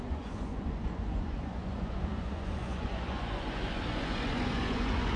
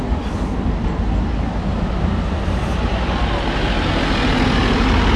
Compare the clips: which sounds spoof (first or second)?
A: first